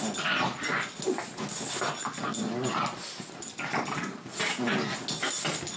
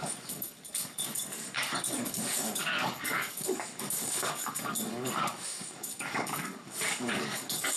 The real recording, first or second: first